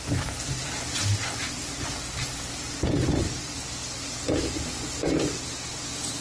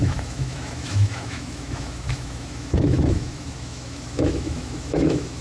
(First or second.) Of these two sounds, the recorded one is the first